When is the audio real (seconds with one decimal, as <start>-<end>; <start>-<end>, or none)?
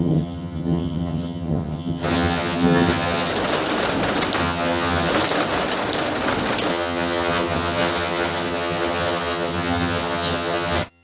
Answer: 3.3-4.4; 5.1-6.7